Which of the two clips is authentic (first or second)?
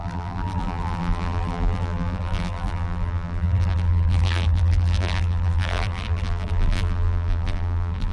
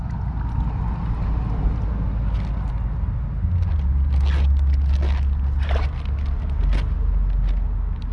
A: second